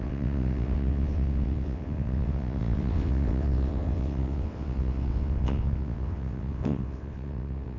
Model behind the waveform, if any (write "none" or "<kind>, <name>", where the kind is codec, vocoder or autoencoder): vocoder, WaveNeXt